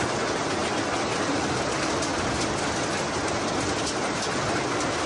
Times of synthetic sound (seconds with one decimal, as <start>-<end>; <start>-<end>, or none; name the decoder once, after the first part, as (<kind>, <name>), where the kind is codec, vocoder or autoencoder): none

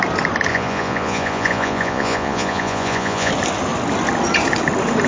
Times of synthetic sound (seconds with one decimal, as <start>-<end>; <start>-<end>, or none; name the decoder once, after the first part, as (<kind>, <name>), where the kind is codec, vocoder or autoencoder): 0.5-3.3 (vocoder, Vocos)

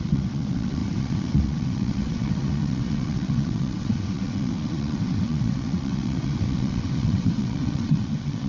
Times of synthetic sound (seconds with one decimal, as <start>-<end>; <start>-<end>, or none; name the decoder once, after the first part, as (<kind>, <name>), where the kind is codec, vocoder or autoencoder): 0.0-8.5 (vocoder, WaveNeXt)

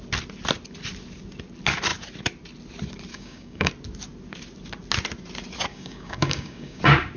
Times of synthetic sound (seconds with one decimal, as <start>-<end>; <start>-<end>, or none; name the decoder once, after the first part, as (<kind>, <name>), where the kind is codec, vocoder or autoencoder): 3.1-3.7 (codec, DAC); 5.7-6.8

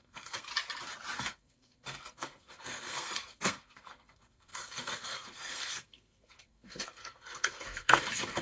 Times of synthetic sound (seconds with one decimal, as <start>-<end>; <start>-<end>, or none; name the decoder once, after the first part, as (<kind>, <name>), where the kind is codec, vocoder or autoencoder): 0.0-0.5 (codec, SNAC); 1.2-8.4

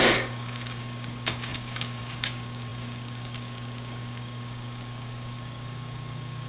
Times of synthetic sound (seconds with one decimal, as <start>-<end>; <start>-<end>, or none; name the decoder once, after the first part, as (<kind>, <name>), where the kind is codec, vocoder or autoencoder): 0.0-6.5 (codec, DAC)